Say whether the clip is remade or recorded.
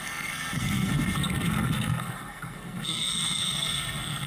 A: remade